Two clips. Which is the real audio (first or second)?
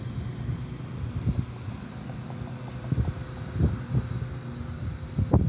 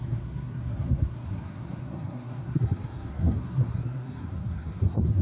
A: first